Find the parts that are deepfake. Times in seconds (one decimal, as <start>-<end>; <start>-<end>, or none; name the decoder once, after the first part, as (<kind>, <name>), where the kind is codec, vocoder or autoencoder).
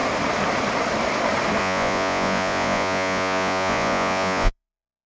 1.6-5.1 (vocoder, Vocos)